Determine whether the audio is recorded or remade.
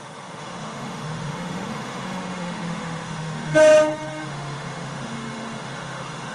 remade